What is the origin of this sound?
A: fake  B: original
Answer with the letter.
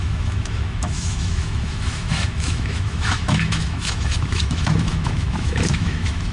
A